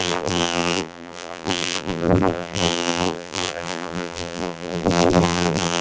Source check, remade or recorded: remade